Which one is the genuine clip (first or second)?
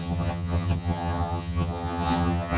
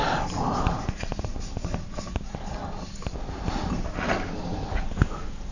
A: second